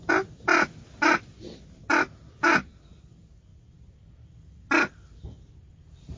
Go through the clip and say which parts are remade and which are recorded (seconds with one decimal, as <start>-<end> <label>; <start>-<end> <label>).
0.0-6.2 recorded